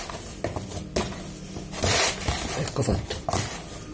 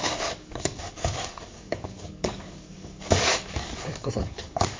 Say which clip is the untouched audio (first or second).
first